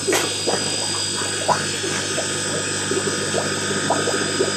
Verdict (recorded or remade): recorded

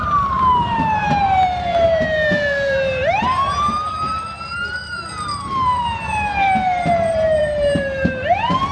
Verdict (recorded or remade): remade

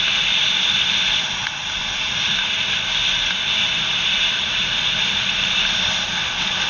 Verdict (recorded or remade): recorded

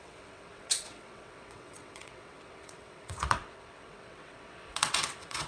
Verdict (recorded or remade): remade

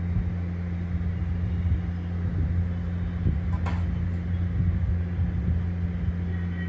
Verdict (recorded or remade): recorded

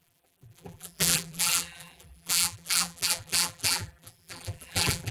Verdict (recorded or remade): remade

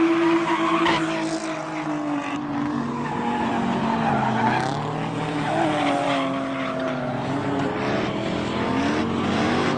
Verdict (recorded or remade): recorded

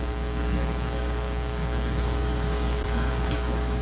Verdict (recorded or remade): remade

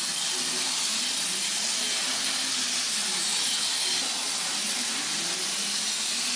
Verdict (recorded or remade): recorded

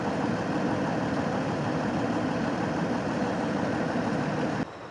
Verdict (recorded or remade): remade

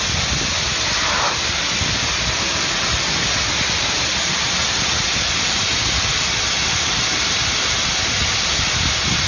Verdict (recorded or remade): recorded